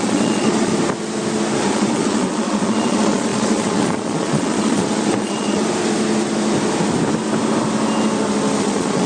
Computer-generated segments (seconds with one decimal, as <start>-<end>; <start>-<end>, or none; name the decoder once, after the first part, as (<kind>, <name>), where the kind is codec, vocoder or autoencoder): 0.0-0.7 (vocoder, Vocos); 1.6-5.6; 8.6-9.1